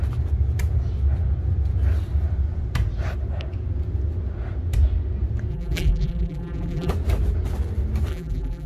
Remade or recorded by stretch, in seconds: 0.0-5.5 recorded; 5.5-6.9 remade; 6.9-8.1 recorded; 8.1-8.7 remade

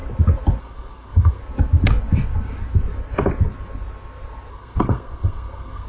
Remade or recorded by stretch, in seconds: 0.0-0.6 recorded; 0.6-1.4 remade; 1.4-4.5 recorded; 4.5-5.9 remade